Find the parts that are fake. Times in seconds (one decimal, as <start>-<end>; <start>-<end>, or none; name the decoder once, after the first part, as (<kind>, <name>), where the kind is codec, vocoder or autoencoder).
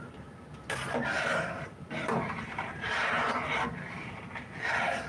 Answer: 1.1-4.2 (vocoder, BigVGAN v2)